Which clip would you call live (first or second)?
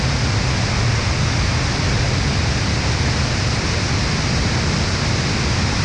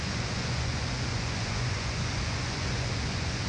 first